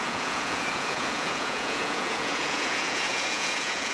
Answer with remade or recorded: remade